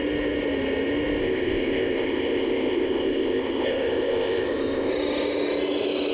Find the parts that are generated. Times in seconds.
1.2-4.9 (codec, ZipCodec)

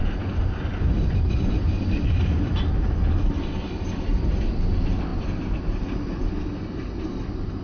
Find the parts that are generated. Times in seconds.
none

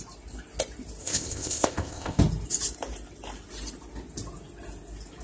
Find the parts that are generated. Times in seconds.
1.0-2.2 (codec, ZipCodec)

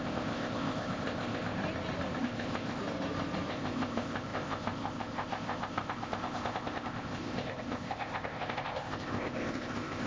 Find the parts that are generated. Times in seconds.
0.0-1.6 (codec, ZipCodec); 2.2-2.8; 3.5-10.1

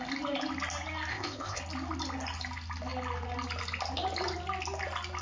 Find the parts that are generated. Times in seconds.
1.1-1.6 (codec, ZipCodec)

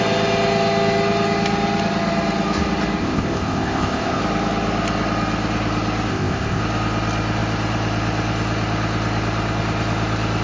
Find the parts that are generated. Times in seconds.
3.0-4.2 (codec, ZipCodec); 6.1-6.6